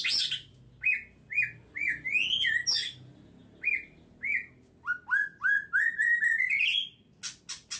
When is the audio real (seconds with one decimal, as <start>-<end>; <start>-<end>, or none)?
0.0-7.8

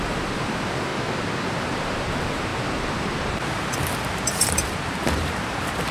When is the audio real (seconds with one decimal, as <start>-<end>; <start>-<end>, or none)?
0.9-1.5

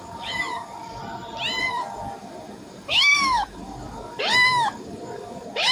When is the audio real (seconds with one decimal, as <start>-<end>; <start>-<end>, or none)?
1.0-1.6

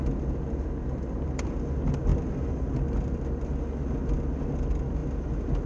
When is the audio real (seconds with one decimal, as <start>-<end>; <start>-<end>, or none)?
0.0-0.4; 1.5-5.7

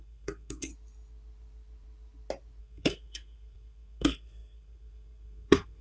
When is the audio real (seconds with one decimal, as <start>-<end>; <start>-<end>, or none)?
0.7-2.6